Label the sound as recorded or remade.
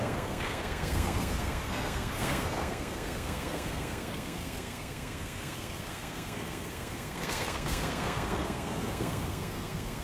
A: remade